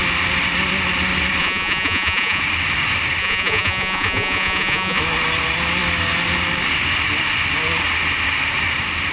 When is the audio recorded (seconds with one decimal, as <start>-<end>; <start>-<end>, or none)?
0.0-1.4; 2.4-3.2; 5.0-9.1